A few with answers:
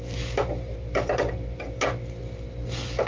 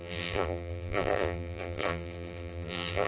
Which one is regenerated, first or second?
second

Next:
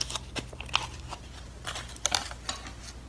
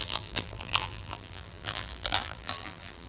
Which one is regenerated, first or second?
second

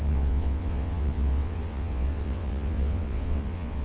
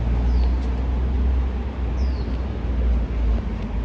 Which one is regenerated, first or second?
first